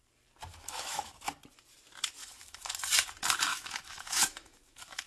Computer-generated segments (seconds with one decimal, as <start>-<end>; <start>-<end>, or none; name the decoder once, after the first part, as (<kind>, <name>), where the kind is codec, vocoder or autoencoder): 0.5-1.3 (autoencoder, DAC-VAE); 2.2-2.7; 3.5-5.1